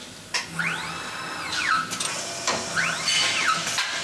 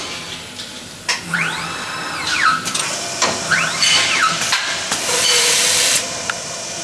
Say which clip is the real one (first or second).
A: first